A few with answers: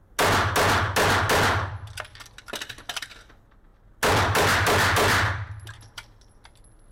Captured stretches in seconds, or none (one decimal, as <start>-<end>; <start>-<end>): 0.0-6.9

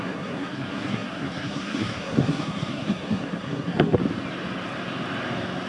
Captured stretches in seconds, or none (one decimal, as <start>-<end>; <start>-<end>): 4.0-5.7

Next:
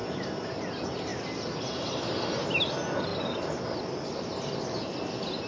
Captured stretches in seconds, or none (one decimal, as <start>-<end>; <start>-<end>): 0.0-5.5

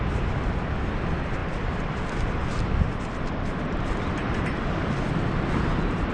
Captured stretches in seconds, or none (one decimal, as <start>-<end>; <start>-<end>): 0.0-6.1

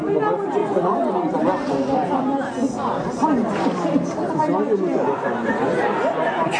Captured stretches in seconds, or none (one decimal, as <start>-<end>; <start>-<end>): 0.0-0.6; 1.1-6.6

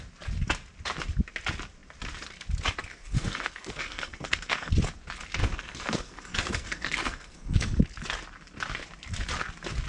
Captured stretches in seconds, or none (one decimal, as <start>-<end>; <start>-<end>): 0.0-2.9; 4.7-5.4; 7.8-9.9